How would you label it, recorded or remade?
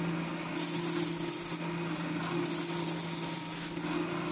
recorded